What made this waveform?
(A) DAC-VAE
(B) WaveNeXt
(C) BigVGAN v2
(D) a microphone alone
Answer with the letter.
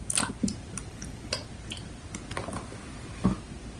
D